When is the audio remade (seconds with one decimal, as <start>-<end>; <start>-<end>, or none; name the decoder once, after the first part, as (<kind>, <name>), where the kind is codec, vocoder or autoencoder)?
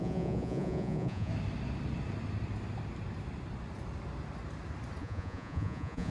0.0-1.3 (vocoder, Vocos); 5.0-6.1